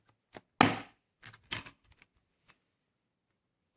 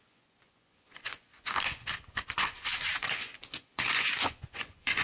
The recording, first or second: first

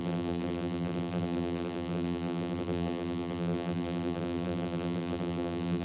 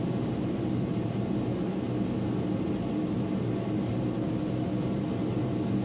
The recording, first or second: second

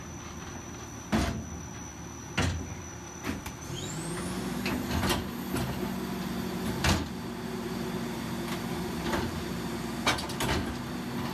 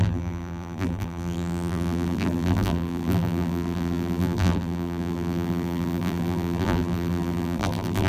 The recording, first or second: first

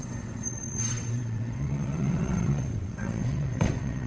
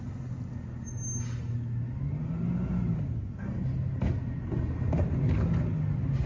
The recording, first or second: second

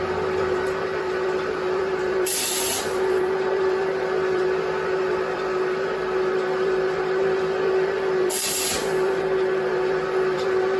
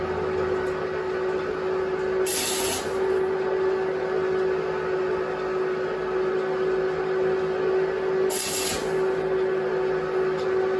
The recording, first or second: second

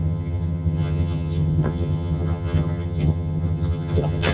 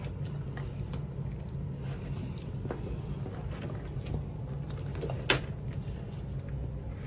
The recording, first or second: second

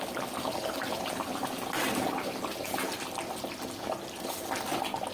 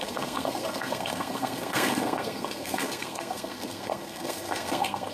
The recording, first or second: first